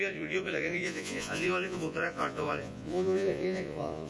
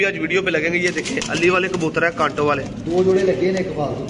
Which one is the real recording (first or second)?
second